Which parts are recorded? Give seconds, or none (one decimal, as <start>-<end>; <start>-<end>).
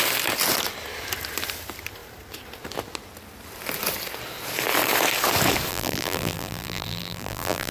0.0-5.7